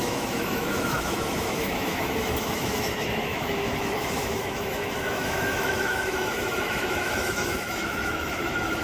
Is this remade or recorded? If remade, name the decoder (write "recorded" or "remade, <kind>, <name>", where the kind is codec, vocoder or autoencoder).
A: remade, autoencoder, DAC-VAE